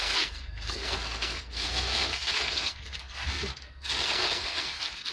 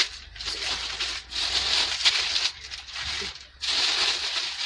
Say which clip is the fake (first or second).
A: first